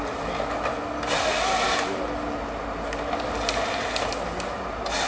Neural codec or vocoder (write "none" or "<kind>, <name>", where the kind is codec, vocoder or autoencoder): none